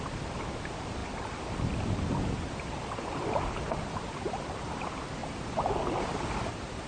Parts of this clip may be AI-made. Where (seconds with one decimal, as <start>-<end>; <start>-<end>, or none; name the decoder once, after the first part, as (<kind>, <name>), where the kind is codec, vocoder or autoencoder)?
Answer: 0.0-1.0 (vocoder, BigVGAN v2); 3.8-5.2; 6.5-6.9